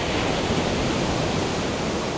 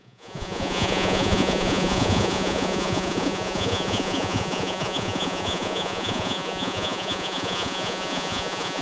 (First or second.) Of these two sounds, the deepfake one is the second